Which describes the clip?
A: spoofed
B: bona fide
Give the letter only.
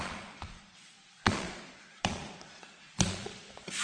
A